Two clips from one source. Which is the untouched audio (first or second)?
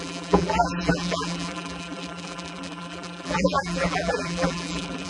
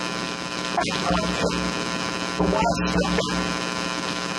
second